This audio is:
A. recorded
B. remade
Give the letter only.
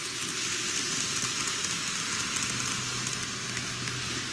A